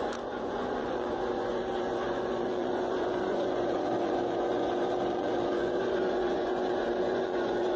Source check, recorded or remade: remade